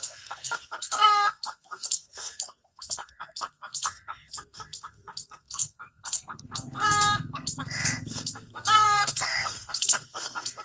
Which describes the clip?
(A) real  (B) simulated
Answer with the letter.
B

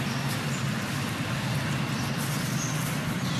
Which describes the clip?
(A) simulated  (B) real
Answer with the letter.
B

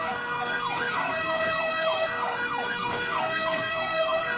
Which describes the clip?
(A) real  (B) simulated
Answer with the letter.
B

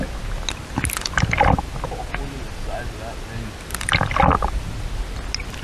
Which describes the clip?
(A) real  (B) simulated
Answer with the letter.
A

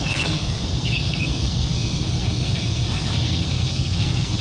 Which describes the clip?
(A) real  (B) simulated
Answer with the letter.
B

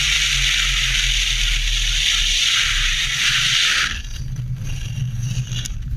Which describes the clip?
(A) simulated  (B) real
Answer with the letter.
B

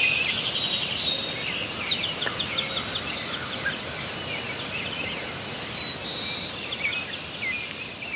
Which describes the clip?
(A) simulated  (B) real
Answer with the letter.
B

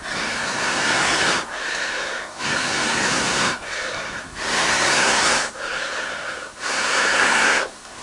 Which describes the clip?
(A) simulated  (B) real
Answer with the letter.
A